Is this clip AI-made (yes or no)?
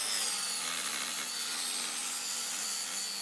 no